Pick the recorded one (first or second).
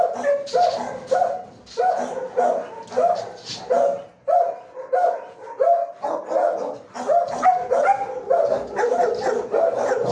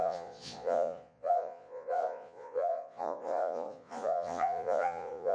first